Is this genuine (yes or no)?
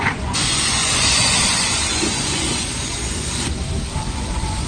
no